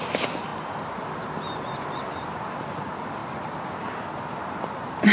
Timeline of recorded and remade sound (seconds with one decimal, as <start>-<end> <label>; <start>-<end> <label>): 0.0-5.1 recorded